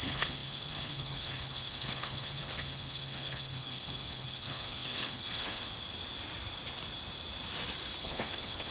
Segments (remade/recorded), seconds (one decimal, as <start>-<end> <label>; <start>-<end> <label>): 0.0-5.7 remade; 5.7-8.0 recorded; 8.0-8.7 remade